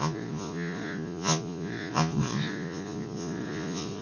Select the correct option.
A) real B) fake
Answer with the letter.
B